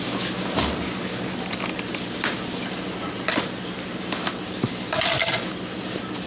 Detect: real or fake real